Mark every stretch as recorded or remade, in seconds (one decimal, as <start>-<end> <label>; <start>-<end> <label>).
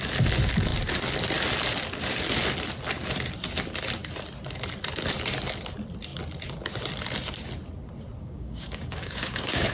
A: 0.0-8.2 recorded; 8.2-9.7 remade